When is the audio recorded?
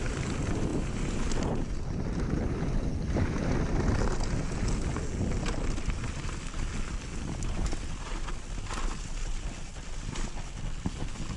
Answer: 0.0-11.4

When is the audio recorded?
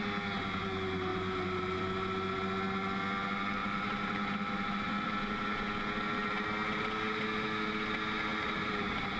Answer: 0.0-1.1; 1.8-3.6; 5.1-8.3